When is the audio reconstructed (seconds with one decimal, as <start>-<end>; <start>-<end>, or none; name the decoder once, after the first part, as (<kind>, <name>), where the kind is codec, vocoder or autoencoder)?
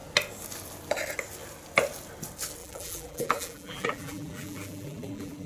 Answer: 2.6-5.5 (vocoder, BigVGAN v2)